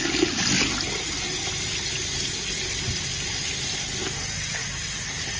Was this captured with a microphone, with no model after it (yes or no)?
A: yes